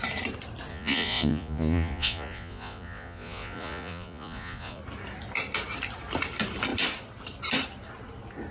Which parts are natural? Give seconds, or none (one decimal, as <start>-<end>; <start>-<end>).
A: 0.0-0.7; 4.8-8.5